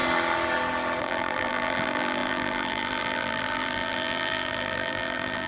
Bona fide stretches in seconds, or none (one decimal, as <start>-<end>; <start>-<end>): 0.0-1.0